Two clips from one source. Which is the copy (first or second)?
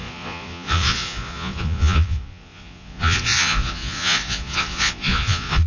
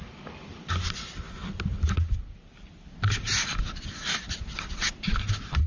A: first